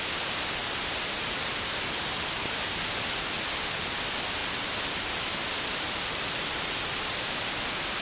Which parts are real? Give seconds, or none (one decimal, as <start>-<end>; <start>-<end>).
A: 0.0-0.6; 2.7-4.4; 7.5-8.0